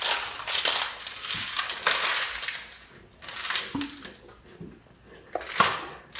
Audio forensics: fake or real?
real